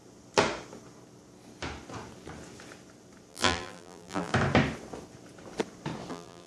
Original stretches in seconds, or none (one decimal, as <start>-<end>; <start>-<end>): 0.0-3.3; 4.3-6.1